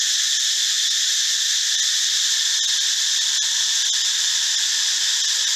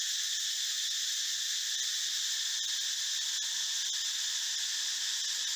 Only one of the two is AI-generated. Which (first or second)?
first